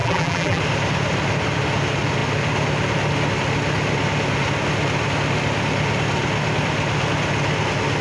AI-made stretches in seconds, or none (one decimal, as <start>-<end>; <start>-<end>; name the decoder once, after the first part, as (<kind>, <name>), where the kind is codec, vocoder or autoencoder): 0.0-0.6 (vocoder, BigVGAN v2)